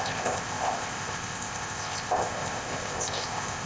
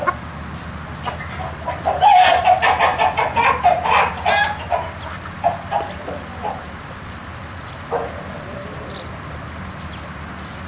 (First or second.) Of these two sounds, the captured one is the second